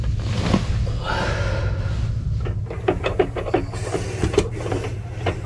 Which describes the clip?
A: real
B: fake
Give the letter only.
A